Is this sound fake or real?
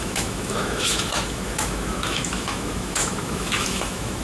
fake